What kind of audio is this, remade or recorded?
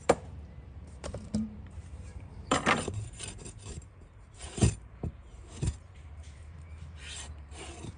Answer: remade